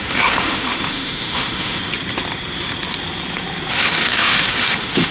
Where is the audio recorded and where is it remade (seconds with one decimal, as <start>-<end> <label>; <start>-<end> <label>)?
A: 0.0-1.8 remade; 1.8-3.7 recorded; 3.7-5.1 remade